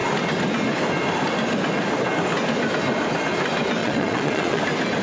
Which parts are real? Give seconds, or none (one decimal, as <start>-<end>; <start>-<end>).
0.0-3.8; 4.6-5.0